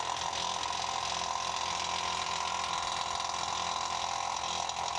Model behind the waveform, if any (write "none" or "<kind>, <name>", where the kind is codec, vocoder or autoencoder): none